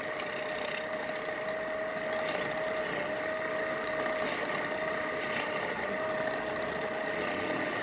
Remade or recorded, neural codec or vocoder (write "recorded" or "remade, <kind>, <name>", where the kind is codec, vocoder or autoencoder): recorded